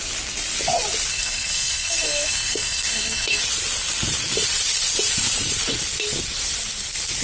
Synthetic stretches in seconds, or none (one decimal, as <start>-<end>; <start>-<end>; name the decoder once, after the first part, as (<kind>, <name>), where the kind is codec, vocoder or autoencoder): 1.1-3.4 (codec, SNAC)